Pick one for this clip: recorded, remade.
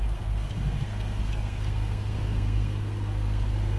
remade